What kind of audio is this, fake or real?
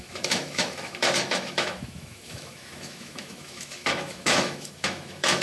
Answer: fake